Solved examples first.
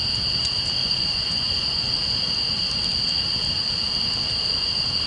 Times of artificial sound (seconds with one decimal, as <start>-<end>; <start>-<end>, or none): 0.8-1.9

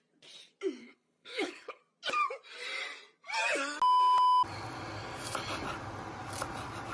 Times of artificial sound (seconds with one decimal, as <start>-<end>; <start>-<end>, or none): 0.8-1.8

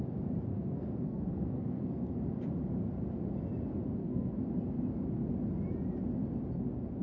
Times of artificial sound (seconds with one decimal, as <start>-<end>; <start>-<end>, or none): 0.5-2.2; 4.0-4.5

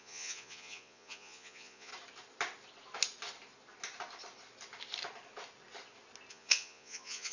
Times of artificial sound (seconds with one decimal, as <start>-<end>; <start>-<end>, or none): 0.0-1.9; 6.3-7.3

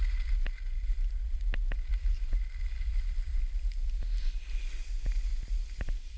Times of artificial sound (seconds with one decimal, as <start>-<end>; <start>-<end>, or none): none

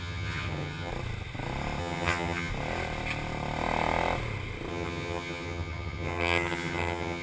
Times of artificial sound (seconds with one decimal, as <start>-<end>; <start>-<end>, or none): 0.0-0.9; 1.8-2.5; 4.7-7.2

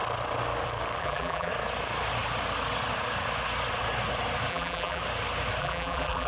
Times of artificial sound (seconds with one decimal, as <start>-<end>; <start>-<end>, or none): 1.0-1.5; 4.5-5.0; 5.6-6.3